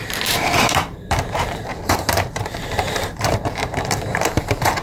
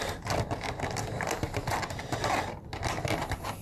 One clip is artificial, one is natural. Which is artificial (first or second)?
first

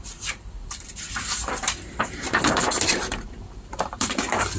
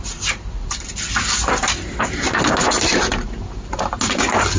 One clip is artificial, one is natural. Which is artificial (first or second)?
first